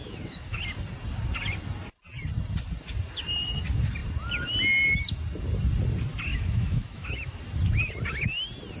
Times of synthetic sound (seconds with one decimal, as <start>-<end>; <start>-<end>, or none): 0.0-0.6; 6.3-7.4